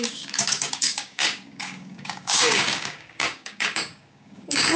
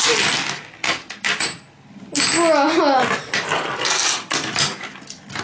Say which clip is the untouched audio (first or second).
second